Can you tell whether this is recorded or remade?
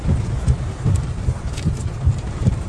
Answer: recorded